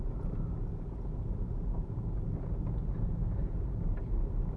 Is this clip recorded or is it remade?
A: recorded